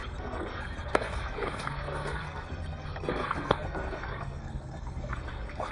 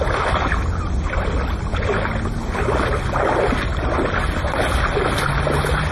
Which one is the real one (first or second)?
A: second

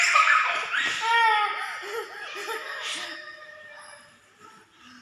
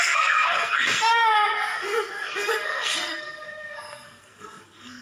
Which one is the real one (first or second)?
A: first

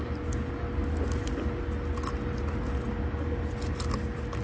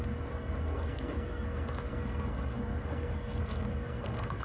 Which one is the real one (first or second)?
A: first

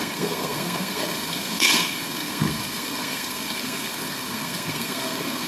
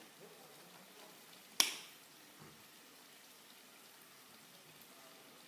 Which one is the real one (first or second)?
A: second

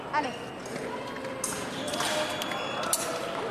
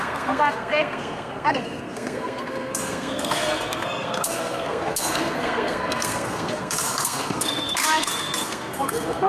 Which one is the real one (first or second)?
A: first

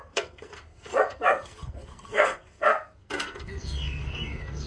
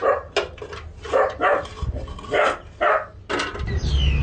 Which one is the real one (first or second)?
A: second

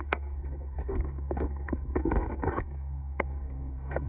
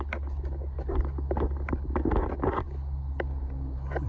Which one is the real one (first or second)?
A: second